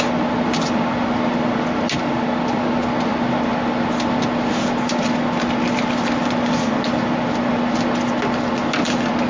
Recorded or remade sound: recorded